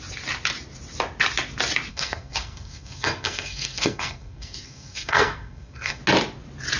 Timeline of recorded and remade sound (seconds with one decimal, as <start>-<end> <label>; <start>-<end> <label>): 0.0-1.9 recorded; 1.9-6.0 remade; 6.0-6.8 recorded

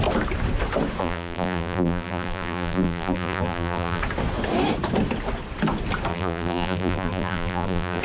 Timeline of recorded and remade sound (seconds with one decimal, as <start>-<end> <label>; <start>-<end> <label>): 0.0-1.0 recorded; 1.0-4.0 remade; 4.0-6.1 recorded; 6.1-8.0 remade

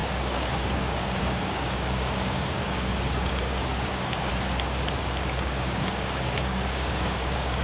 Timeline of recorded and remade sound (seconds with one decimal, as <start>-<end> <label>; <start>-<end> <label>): 0.0-4.3 remade; 4.3-5.0 recorded; 5.0-7.6 remade